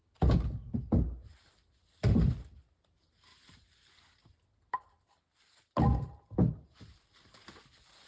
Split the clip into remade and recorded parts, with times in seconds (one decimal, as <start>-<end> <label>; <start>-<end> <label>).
0.0-8.1 recorded